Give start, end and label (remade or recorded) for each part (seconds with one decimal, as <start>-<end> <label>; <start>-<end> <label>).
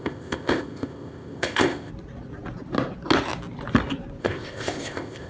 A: 0.0-1.9 remade; 1.9-4.2 recorded; 4.2-5.3 remade